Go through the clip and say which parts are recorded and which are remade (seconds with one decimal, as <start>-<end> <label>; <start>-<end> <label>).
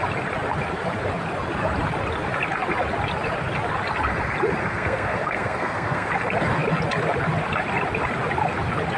0.0-4.6 recorded; 4.6-6.1 remade; 6.1-9.0 recorded